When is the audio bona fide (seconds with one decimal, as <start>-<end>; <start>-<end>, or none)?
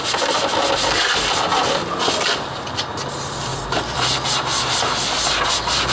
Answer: 0.0-1.5; 2.7-3.5; 4.6-5.9